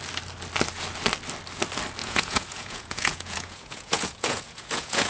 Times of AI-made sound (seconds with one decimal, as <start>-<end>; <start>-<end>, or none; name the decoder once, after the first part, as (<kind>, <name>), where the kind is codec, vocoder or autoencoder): 2.0-5.1 (vocoder, Vocos)